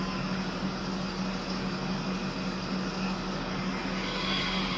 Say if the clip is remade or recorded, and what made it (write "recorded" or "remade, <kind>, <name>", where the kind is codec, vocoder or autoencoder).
remade, codec, DAC